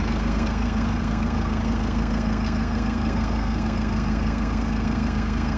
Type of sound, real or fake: fake